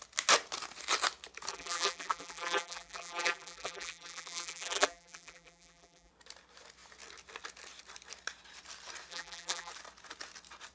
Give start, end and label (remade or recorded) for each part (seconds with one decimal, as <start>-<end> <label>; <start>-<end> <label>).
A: 0.0-1.5 recorded; 1.5-6.1 remade; 6.1-9.1 recorded; 9.1-9.7 remade; 9.7-10.7 recorded